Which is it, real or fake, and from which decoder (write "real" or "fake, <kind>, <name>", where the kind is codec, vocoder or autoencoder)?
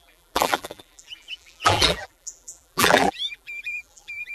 fake, vocoder, BigVGAN v2